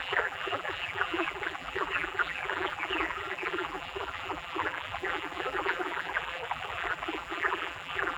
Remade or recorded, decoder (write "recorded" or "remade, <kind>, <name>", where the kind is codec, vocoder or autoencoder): remade, vocoder, BigVGAN v2